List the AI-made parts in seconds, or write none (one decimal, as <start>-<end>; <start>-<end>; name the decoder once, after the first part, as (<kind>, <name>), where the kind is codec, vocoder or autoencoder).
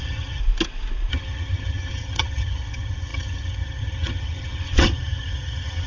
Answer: 0.0-0.4 (vocoder, HiFi-GAN); 1.1-5.9